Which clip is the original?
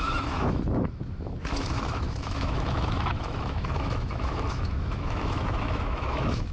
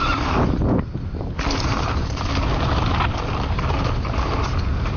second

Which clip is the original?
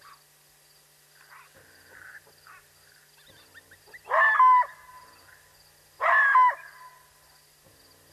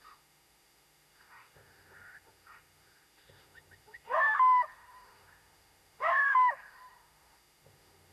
first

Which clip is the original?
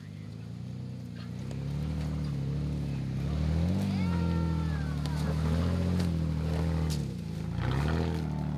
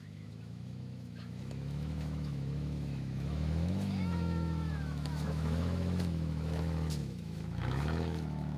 first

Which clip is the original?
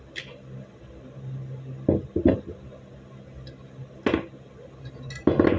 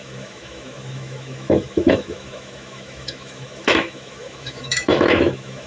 first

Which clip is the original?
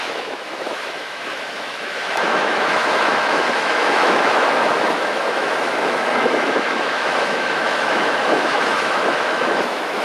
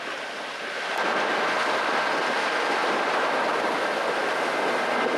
second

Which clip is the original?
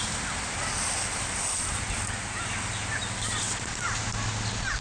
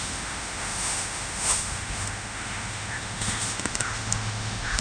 first